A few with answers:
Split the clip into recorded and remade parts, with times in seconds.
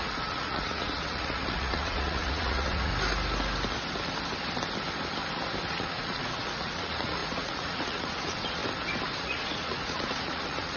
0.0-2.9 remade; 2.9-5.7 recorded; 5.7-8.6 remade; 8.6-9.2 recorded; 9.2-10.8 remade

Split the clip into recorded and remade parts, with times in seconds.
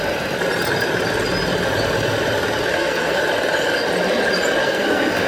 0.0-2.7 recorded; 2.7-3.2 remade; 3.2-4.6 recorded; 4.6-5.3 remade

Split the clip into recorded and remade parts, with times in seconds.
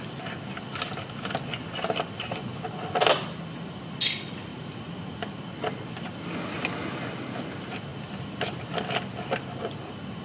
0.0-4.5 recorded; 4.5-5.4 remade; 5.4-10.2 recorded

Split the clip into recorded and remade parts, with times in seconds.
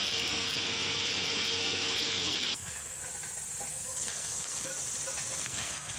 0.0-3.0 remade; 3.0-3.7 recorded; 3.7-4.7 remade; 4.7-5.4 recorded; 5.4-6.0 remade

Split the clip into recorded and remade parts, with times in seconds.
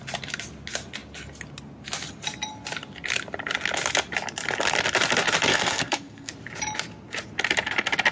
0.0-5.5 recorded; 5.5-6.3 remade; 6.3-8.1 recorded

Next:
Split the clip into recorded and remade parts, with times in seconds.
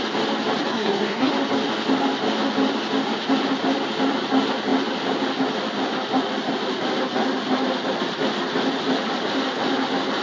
0.0-0.7 recorded; 0.7-1.3 remade; 1.3-10.2 recorded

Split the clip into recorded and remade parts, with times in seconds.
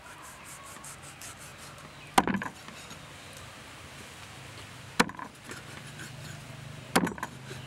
0.0-7.7 recorded